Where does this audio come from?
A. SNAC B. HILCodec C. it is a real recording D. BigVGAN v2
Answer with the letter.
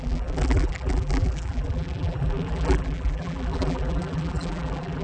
D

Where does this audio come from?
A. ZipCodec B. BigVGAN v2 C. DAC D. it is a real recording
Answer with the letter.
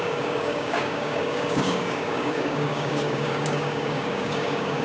C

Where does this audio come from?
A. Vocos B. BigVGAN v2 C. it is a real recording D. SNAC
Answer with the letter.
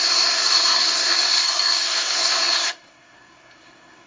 D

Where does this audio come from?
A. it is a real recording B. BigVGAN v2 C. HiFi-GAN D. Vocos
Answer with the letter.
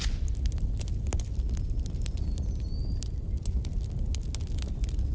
A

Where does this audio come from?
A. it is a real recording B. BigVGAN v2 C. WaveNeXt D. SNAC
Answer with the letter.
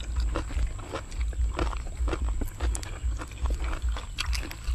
A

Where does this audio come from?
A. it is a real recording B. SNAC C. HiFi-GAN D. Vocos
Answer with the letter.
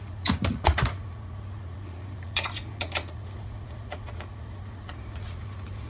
D